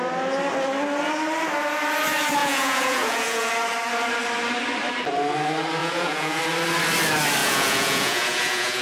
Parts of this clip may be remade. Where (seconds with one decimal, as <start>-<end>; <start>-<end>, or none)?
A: 2.4-3.5; 5.8-6.4; 7.4-8.8